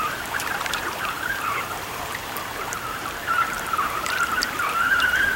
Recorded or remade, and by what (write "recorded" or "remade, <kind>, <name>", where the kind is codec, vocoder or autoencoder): remade, vocoder, BigVGAN v2